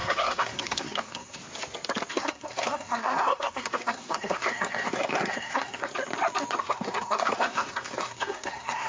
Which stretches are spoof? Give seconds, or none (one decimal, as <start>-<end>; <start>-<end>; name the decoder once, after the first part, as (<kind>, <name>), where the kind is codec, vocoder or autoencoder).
0.0-1.4 (codec, SNAC); 2.1-5.9; 6.6-8.9

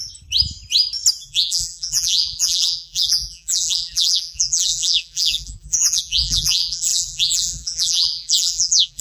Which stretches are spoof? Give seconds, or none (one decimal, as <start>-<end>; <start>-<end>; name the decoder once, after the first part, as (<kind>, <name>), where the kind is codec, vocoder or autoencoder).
1.2-9.0 (vocoder, BigVGAN v2)

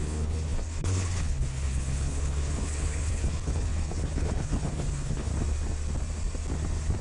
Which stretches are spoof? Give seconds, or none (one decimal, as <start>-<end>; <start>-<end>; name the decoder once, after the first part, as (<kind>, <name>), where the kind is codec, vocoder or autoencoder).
0.0-5.3 (codec, HILCodec)

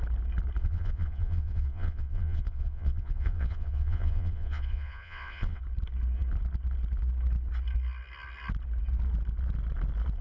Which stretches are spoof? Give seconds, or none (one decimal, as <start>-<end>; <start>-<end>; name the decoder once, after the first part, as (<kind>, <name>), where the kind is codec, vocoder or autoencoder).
0.6-5.6 (vocoder, Vocos)

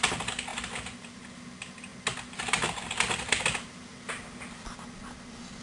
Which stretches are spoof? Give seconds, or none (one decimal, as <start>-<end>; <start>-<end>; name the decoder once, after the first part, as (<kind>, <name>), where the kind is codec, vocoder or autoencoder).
none

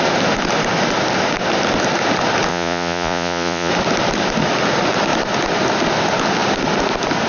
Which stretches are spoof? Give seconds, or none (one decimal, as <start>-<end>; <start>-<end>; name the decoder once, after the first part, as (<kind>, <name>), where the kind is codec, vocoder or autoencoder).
2.5-3.7 (vocoder, Vocos)

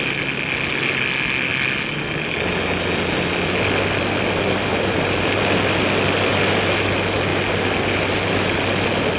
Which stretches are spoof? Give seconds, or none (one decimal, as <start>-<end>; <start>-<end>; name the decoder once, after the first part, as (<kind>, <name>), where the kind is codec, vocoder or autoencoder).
4.7-5.4 (vocoder, BigVGAN v2)